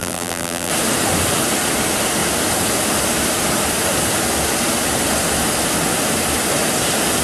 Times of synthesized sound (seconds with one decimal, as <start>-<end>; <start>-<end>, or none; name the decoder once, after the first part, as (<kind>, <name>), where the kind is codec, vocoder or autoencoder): 0.0-0.7 (vocoder, BigVGAN v2)